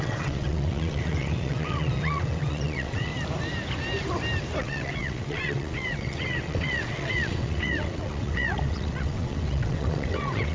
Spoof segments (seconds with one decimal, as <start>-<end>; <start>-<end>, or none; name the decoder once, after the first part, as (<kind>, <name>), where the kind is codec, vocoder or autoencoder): 0.0-3.1 (vocoder, WaveNeXt); 4.6-10.5